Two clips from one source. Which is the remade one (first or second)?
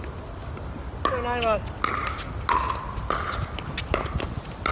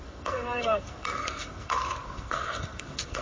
second